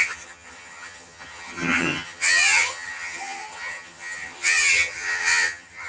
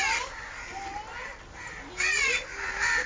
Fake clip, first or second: first